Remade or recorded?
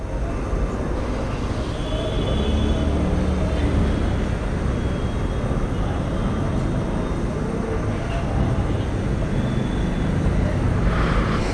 recorded